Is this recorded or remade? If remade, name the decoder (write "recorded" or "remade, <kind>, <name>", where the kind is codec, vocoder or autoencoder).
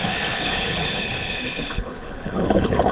remade, codec, HILCodec